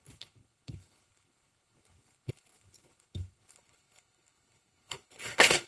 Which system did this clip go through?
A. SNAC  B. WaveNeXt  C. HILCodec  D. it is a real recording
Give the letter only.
C